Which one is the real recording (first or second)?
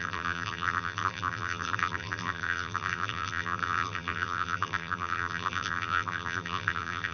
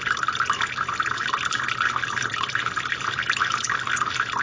second